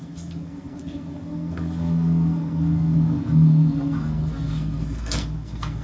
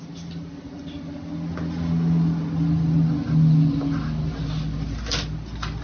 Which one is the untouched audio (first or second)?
second